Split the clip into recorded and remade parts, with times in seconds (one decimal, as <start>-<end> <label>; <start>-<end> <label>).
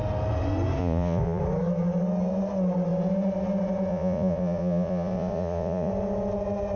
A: 0.0-0.8 recorded; 0.8-1.4 remade; 1.4-3.9 recorded; 3.9-5.9 remade; 5.9-6.8 recorded